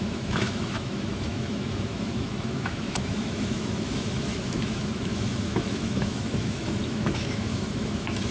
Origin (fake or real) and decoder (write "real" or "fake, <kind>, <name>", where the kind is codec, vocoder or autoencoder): fake, autoencoder, DAC-VAE